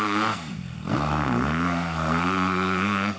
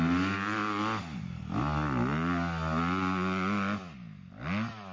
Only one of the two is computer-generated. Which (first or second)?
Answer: first